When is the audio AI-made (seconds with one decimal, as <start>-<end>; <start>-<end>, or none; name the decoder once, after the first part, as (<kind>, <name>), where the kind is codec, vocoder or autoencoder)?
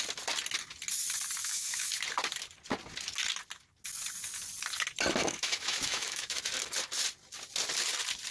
1.4-1.9 (autoencoder, DAC-VAE); 5.2-6.4